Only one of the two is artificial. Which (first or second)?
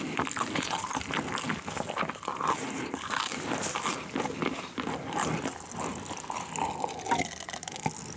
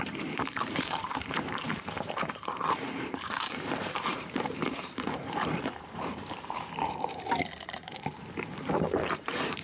second